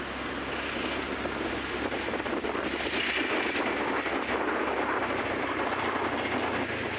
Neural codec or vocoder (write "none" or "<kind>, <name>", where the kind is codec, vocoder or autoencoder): none